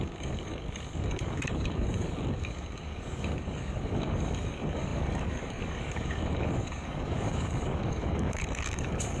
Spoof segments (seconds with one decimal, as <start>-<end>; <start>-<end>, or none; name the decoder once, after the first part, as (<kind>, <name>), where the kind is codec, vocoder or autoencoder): 0.0-9.2 (codec, DAC)

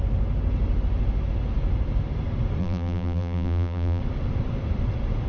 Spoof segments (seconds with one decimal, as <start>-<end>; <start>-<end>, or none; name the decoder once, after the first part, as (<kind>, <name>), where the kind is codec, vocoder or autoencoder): 2.6-4.0 (vocoder, BigVGAN v2)

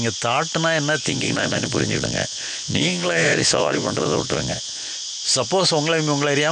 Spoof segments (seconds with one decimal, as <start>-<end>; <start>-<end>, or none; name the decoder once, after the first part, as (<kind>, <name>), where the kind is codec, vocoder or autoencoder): 1.0-4.9 (vocoder, Vocos)

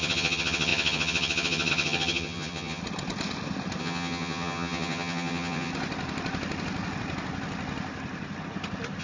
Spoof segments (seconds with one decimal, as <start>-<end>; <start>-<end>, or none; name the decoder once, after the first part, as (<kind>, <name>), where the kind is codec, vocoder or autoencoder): 0.0-2.8 (vocoder, HiFi-GAN); 3.8-5.7

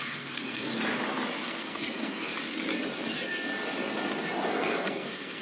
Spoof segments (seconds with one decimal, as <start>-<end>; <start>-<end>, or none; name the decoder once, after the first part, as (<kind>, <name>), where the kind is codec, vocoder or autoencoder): 0.0-0.7 (codec, SNAC); 1.4-2.3; 4.5-5.4

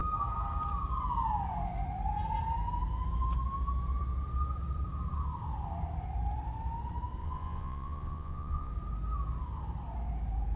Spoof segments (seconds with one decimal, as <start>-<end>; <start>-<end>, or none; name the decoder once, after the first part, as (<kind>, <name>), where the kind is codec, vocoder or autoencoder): 7.2-8.7 (vocoder, Vocos)

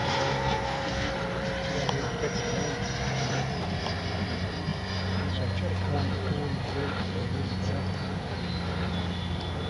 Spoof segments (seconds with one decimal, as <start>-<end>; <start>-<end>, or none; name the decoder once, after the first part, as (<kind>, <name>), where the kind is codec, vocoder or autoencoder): 0.0-1.1 (codec, SNAC); 7.0-7.5